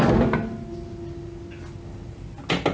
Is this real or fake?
real